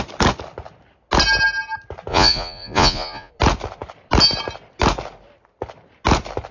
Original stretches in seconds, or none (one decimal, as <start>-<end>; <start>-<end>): 0.0-2.1; 3.3-6.5